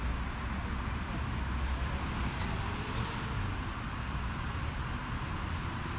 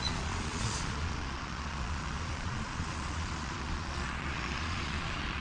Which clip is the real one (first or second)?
first